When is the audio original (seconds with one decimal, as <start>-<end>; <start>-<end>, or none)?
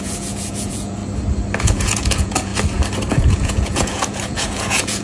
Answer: 1.0-1.6; 2.5-3.1